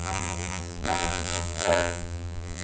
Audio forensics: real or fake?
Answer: fake